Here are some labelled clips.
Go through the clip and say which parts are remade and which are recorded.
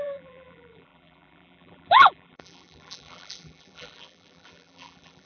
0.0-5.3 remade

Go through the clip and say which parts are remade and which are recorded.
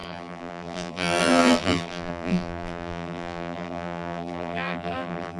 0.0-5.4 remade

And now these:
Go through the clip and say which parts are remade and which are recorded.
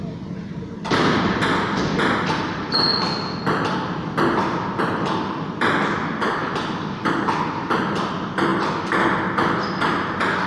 0.0-10.5 recorded